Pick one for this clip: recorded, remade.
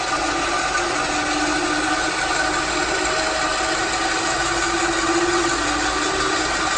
recorded